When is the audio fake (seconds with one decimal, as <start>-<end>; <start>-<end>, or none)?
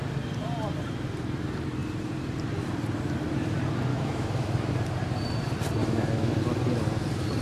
3.9-4.7; 5.8-6.3